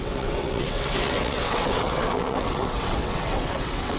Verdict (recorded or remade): remade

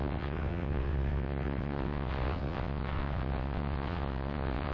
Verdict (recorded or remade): remade